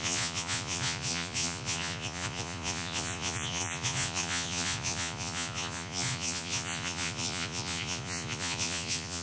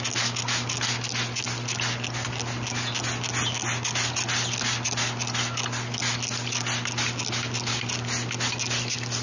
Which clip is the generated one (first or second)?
first